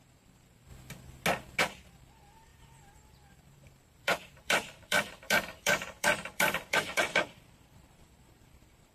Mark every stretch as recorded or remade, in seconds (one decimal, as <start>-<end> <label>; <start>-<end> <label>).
0.0-0.7 remade; 0.7-1.6 recorded; 1.6-8.9 remade